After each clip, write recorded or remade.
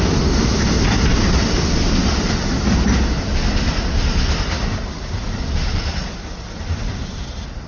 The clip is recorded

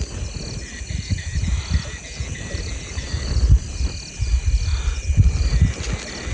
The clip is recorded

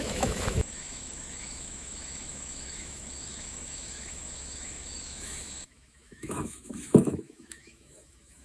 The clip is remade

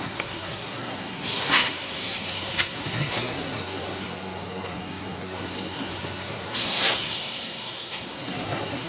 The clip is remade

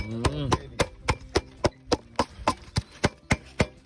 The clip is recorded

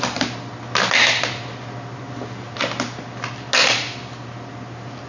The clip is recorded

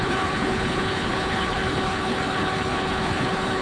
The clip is remade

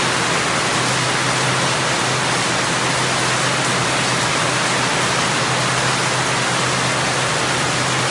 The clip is recorded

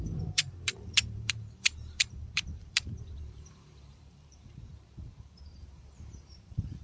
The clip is remade